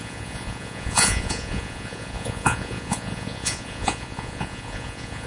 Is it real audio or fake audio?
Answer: fake